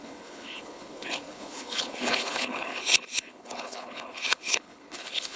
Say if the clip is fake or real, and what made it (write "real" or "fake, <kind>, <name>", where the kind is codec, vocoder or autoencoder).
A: fake, codec, HILCodec